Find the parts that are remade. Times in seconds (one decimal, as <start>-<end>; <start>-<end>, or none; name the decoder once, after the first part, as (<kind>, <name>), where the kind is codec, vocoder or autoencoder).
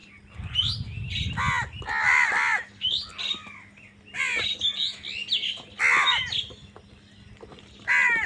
none